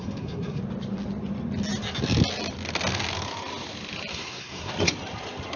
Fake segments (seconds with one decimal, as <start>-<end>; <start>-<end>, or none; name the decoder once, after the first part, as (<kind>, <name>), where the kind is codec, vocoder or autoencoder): 0.0-0.6 (codec, SNAC); 4.1-4.7